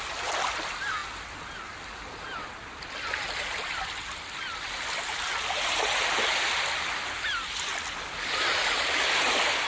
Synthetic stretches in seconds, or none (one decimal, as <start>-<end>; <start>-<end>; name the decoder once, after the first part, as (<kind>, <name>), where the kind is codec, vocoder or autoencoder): none